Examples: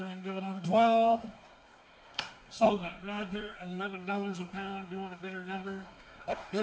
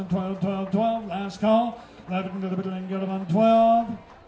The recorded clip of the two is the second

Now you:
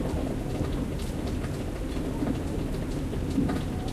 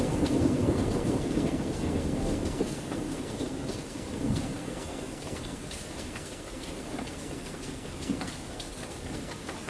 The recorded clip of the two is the first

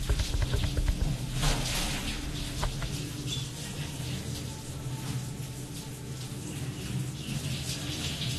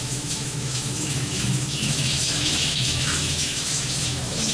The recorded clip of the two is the first